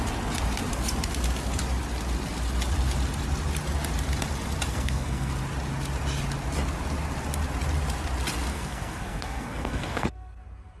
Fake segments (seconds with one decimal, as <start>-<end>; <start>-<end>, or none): 4.7-5.3; 8.5-10.4